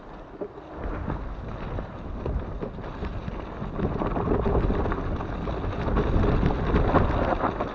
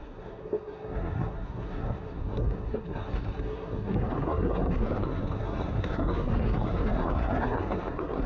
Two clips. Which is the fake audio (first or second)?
second